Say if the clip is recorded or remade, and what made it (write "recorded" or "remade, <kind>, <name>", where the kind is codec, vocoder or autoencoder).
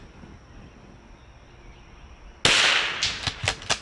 recorded